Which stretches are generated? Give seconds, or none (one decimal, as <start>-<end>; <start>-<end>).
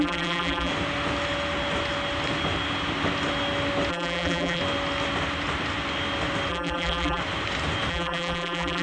0.0-0.7; 3.9-4.6; 6.5-7.2; 7.9-8.8